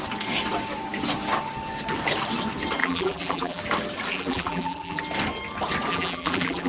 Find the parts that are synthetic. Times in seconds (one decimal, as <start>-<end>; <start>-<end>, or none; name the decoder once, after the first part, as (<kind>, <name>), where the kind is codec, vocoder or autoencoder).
2.8-3.6 (vocoder, BigVGAN v2); 4.1-5.0; 5.9-6.7